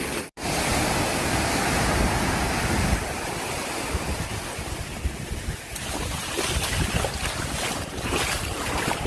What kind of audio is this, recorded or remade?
recorded